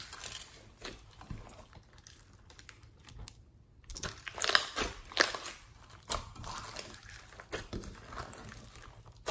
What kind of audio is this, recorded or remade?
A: recorded